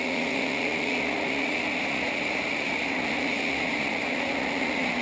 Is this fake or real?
fake